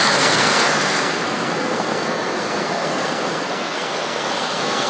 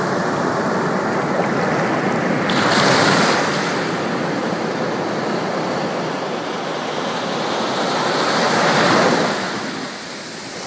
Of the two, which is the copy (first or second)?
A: first